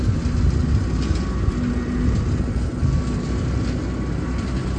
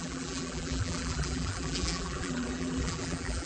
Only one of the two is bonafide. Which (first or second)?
first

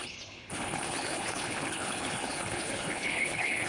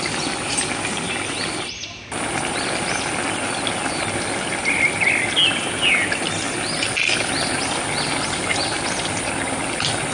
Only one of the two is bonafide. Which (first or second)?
second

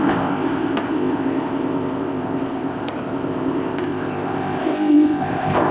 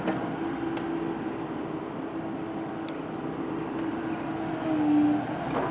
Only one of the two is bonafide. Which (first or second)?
second